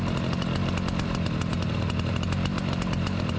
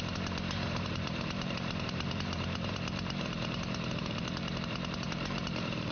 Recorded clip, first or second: first